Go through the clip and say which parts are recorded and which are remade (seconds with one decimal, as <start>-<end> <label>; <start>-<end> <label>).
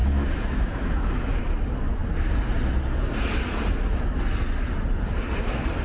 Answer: 0.0-1.4 remade; 1.4-5.8 recorded